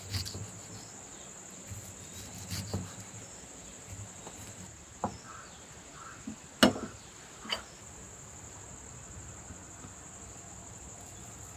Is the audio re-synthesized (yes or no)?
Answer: no